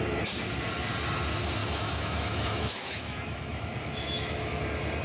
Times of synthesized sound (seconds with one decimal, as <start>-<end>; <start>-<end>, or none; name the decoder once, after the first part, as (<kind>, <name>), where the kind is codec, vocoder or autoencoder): 1.6-4.6 (autoencoder, DAC-VAE)